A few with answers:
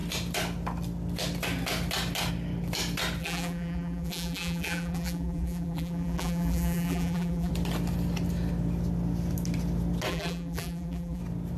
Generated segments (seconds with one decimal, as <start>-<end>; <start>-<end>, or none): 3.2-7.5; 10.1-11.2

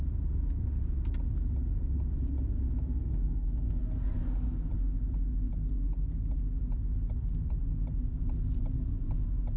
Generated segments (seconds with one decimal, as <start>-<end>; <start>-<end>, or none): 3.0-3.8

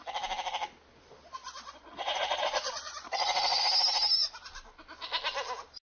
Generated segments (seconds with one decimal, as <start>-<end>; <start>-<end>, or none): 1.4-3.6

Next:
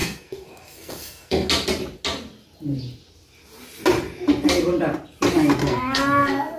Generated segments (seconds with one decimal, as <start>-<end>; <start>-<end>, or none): 0.0-1.5; 5.6-6.6

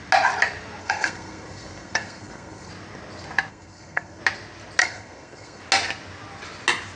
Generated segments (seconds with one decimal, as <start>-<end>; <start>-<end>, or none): 0.8-2.7; 3.5-4.2; 4.8-5.6

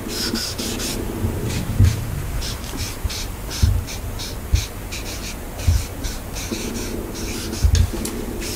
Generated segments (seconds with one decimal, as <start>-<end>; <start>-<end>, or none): 0.9-3.7